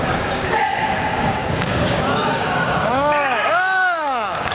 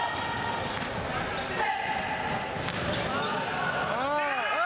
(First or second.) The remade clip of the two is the first